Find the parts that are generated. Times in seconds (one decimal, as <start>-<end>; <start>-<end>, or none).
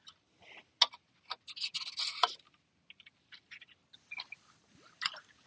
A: none